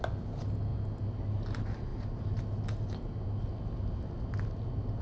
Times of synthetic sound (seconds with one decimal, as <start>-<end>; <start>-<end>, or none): none